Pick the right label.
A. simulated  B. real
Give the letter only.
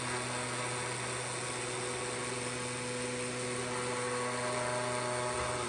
B